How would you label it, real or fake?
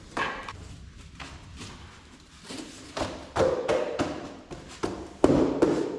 real